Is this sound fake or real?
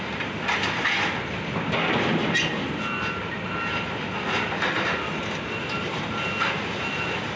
real